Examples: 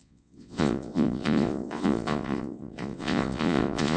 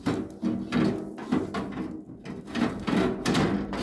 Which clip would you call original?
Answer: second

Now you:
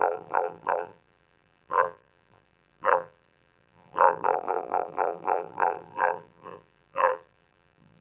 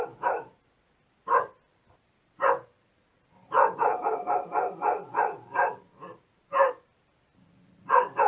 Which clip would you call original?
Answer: second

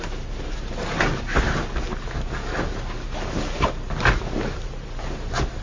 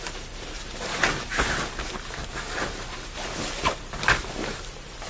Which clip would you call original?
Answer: first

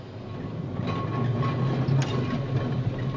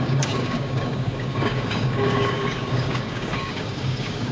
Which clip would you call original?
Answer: first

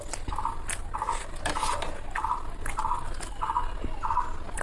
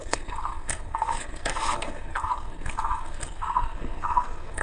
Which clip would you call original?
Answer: first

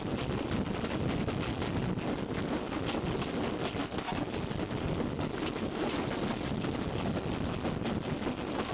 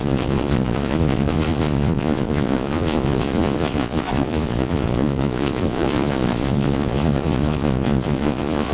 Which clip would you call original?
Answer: first